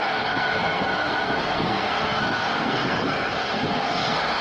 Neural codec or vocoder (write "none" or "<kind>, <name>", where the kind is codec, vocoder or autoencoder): codec, SNAC